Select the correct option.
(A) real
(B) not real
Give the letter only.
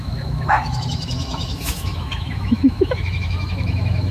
B